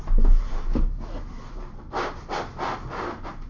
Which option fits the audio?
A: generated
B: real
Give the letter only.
B